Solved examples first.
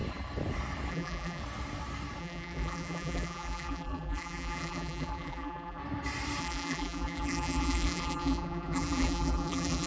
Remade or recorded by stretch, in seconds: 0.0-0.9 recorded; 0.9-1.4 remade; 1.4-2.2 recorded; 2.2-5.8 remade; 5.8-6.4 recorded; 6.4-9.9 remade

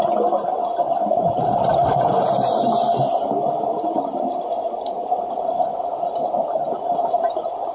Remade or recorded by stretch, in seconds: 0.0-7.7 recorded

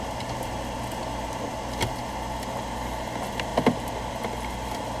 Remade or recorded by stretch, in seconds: 0.0-5.0 recorded